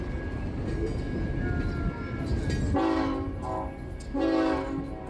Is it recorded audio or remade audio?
recorded